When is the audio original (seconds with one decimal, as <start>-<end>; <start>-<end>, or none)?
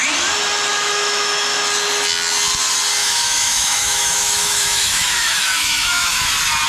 0.0-0.7; 1.6-3.0; 6.3-6.7